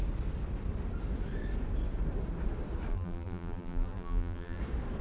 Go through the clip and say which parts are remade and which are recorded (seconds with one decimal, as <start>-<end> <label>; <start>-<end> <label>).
0.0-2.9 recorded; 2.9-4.6 remade; 4.6-5.0 recorded